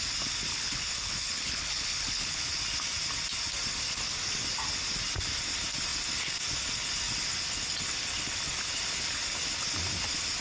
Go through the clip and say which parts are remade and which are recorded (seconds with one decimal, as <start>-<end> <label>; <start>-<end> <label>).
0.0-0.5 recorded; 0.5-2.4 remade; 2.4-10.4 recorded